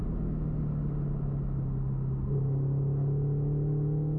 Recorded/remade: recorded